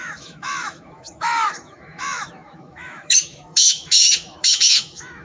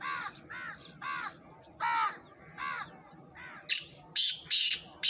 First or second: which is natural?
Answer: second